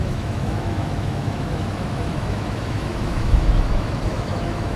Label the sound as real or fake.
fake